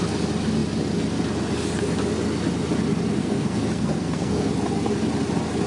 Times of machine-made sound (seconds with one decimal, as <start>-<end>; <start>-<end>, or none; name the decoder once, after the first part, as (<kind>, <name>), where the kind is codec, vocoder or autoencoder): 3.2-4.5 (codec, SNAC)